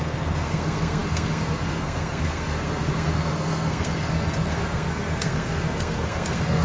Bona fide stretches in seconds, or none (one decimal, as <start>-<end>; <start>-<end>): none